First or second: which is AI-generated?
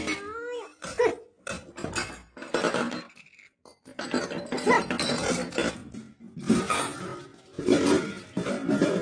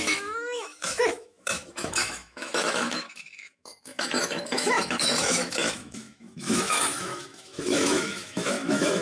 second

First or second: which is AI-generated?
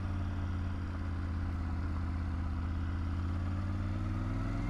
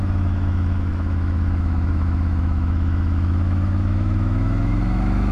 second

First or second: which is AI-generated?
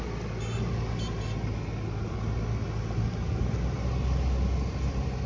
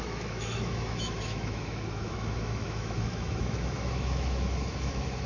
second